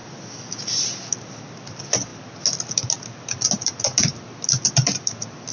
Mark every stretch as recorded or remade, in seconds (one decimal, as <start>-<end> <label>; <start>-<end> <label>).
0.0-5.5 recorded